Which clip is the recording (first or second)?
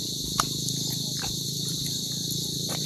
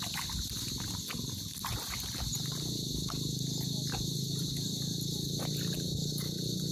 second